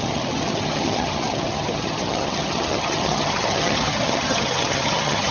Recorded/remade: remade